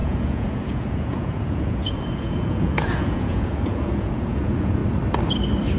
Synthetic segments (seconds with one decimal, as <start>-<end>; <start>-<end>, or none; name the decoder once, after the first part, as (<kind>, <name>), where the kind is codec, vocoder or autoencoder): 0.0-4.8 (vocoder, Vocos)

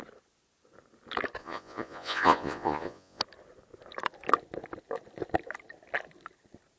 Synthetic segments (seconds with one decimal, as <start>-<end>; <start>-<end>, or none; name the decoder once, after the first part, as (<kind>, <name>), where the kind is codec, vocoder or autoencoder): 1.4-3.2 (vocoder, Vocos)

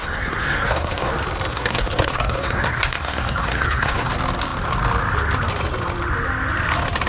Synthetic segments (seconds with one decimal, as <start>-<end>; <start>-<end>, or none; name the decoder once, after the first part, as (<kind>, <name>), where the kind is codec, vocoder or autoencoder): 0.0-1.1 (codec, SNAC); 1.5-4.1

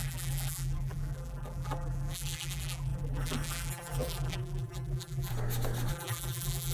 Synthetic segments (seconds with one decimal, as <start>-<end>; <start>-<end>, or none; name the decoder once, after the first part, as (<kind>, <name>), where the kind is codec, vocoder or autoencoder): 0.0-5.3 (vocoder, BigVGAN v2); 5.9-6.7

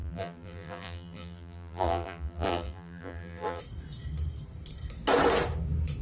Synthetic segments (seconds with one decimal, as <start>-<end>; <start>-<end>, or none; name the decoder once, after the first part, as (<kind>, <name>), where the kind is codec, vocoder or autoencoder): 0.0-3.6 (vocoder, BigVGAN v2)

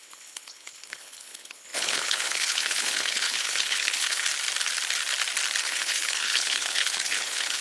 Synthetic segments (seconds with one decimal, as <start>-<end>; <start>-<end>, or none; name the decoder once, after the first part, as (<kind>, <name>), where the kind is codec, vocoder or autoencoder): 0.0-4.3 (codec, HILCodec); 5.6-7.6